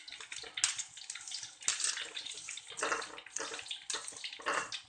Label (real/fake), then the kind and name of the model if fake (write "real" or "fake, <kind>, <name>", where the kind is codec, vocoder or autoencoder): real